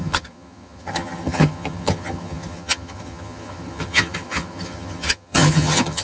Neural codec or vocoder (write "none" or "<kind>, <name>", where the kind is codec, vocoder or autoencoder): vocoder, HiFi-GAN